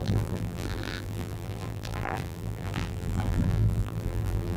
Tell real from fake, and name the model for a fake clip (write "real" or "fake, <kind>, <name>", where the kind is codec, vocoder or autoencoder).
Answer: fake, vocoder, BigVGAN v2